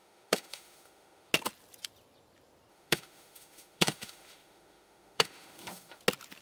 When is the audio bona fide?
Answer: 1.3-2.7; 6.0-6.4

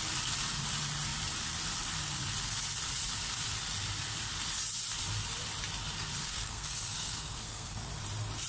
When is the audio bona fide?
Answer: 0.0-6.2; 7.9-8.5

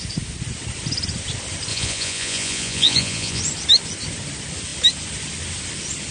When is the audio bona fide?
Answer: 0.0-1.7; 3.4-6.1